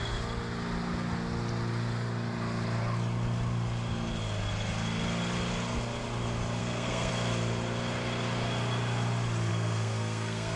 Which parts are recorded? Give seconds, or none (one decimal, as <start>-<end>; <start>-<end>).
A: 0.0-6.6; 7.1-9.5

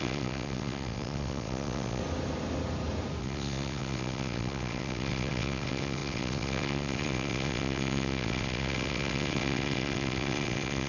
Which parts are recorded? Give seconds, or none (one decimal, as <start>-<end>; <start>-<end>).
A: 2.0-3.2

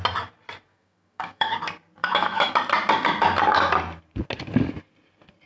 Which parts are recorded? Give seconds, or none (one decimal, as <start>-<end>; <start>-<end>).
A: 0.0-0.7; 1.6-2.0; 2.5-5.5